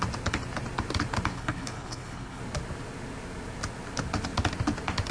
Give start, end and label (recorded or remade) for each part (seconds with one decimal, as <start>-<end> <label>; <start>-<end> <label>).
0.0-1.3 recorded; 1.3-2.4 remade; 2.4-5.1 recorded